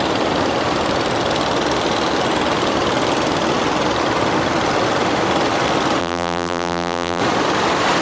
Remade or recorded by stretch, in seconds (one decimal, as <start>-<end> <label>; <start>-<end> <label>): 0.0-6.0 recorded; 6.0-7.2 remade; 7.2-8.0 recorded